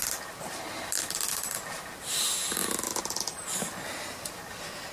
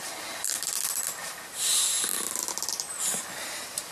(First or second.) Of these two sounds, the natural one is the first